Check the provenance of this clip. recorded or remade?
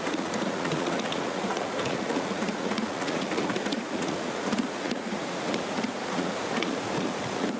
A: remade